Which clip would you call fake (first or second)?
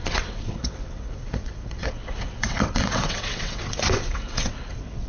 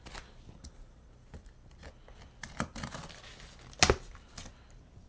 first